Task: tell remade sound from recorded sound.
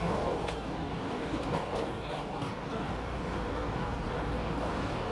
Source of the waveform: remade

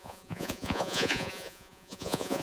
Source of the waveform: remade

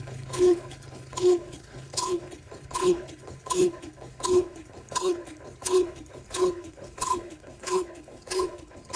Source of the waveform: remade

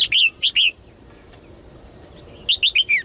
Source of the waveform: recorded